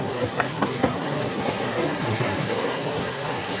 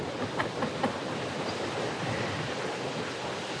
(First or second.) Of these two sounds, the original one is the second